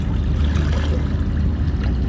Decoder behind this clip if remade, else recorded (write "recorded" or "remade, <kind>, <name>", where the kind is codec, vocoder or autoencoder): recorded